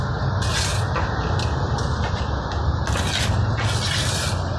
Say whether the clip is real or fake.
real